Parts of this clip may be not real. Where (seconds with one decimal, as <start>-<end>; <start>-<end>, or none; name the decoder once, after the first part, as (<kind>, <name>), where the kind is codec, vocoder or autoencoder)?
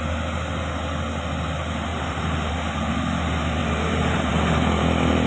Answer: 1.9-2.5 (vocoder, BigVGAN v2); 3.6-4.3